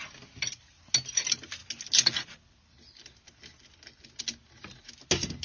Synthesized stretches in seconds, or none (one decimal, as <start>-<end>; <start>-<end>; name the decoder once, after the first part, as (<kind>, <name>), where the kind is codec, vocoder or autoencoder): none